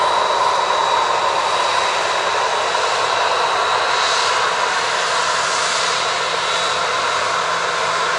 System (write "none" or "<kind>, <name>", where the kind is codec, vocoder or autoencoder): none